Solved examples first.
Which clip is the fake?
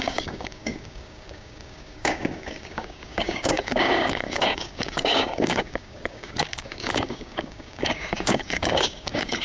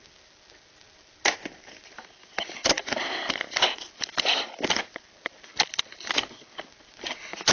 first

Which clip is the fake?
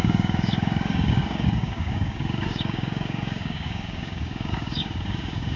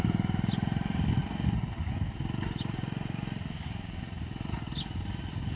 first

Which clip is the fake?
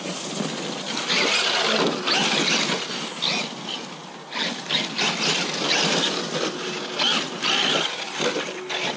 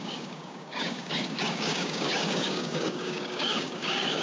second